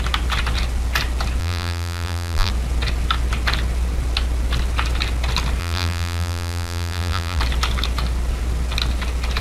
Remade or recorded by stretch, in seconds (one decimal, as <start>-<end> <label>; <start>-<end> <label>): 0.0-1.4 recorded; 1.4-2.5 remade; 2.5-5.6 recorded; 5.6-7.4 remade; 7.4-9.4 recorded